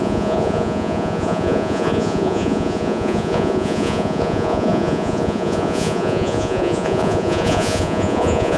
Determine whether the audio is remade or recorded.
remade